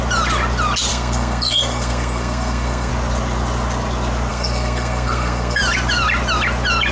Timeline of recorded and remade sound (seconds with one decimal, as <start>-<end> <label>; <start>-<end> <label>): 0.0-0.9 recorded; 0.9-2.9 remade; 2.9-4.3 recorded; 4.3-5.6 remade; 5.6-6.9 recorded